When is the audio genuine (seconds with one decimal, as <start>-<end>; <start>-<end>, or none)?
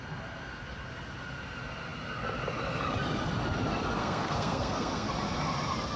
0.0-4.0; 5.1-6.0